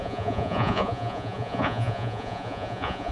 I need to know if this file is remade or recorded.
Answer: remade